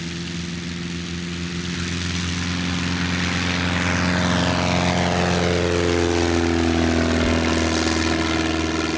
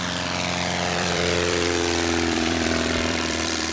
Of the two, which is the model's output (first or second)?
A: second